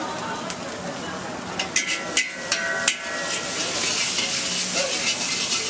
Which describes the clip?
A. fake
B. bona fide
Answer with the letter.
B